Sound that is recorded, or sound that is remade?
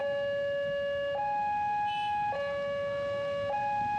recorded